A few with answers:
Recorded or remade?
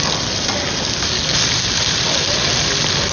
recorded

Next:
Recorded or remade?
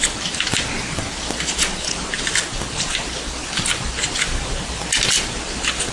recorded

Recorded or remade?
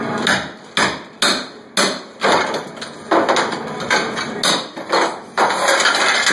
recorded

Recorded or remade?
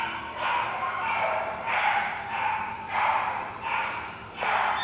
remade